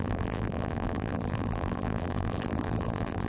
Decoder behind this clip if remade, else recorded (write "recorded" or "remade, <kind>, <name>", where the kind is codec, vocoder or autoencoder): remade, vocoder, BigVGAN v2